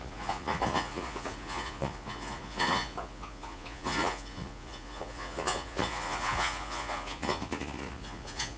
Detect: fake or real fake